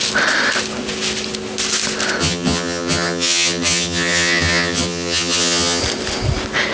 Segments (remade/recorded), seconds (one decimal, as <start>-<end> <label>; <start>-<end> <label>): 0.0-2.2 recorded; 2.2-5.8 remade; 5.8-6.7 recorded

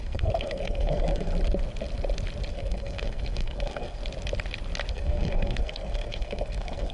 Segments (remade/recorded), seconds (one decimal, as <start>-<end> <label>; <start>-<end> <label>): 0.0-1.3 remade; 1.3-2.5 recorded; 2.5-4.0 remade; 4.0-4.9 recorded; 4.9-6.9 remade